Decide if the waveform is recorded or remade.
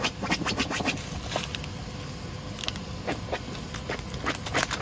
recorded